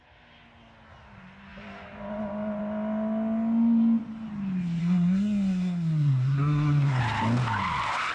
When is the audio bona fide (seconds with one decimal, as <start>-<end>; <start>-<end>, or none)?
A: 0.0-4.8; 7.0-8.1